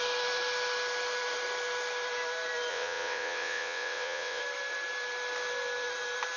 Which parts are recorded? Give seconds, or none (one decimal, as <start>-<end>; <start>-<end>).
0.0-2.7; 4.4-6.4